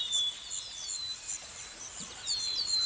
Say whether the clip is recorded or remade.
recorded